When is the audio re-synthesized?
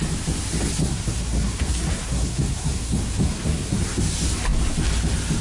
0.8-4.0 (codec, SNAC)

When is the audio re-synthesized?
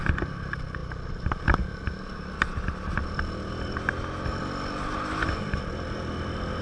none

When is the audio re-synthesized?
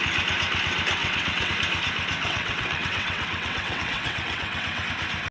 1.0-1.5 (vocoder, WaveNeXt); 2.2-4.8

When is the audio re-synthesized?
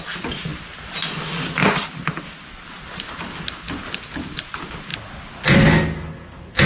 none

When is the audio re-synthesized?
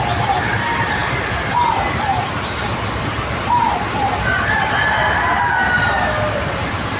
none